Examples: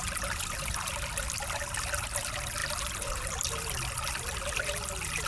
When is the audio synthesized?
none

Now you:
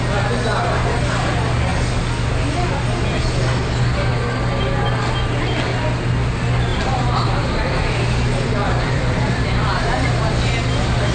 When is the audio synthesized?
6.7-10.3 (vocoder, BigVGAN v2)

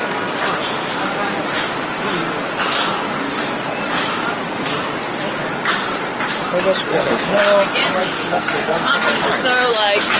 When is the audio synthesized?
6.9-7.4 (codec, SNAC); 8.0-9.3

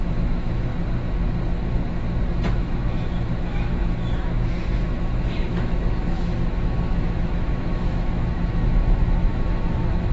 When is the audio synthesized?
0.0-0.7 (autoencoder, DAC-VAE); 2.5-10.1

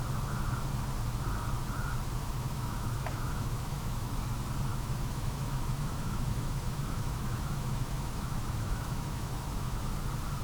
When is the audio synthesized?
2.2-4.2 (autoencoder, DAC-VAE); 4.7-9.9

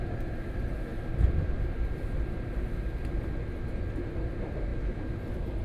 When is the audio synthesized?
4.7-5.6 (vocoder, BigVGAN v2)

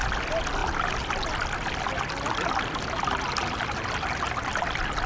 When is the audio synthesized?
none